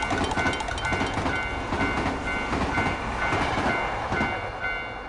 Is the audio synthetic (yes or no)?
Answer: no